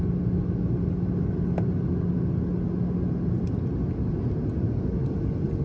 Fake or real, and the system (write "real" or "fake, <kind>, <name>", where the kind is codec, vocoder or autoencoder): real